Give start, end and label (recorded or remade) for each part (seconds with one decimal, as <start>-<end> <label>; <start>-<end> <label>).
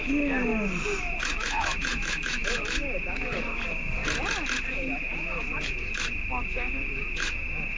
0.0-0.5 remade; 0.5-1.0 recorded; 1.0-4.0 remade; 4.0-4.7 recorded; 4.7-7.8 remade